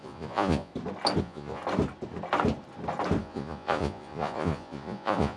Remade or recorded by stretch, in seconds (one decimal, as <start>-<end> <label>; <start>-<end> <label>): 0.0-0.7 remade; 0.7-1.2 recorded; 1.2-1.6 remade; 1.6-3.2 recorded; 3.2-5.4 remade